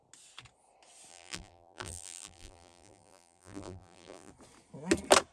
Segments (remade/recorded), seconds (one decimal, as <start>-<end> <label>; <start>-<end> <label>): 0.0-1.1 recorded; 1.1-4.3 remade; 4.3-5.3 recorded